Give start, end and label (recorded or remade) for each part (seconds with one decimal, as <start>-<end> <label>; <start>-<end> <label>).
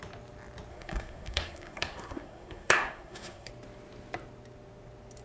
0.0-0.7 recorded; 0.7-3.5 remade; 3.5-5.2 recorded